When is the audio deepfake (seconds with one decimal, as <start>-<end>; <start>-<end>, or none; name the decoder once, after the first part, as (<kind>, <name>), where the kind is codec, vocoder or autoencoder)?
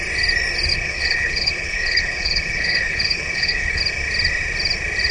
0.7-3.8 (codec, HILCodec)